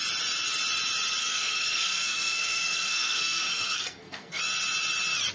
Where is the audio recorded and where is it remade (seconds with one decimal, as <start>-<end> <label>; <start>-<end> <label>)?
0.0-1.2 recorded; 1.2-4.4 remade; 4.4-5.3 recorded